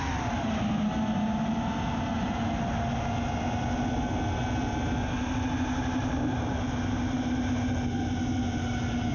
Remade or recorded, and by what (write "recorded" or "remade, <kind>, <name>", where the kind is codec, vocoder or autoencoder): recorded